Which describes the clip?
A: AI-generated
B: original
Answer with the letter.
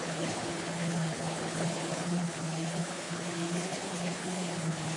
A